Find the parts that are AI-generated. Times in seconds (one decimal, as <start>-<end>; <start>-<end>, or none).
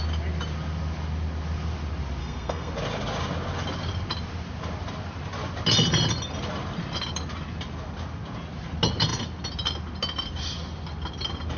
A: 2.2-2.7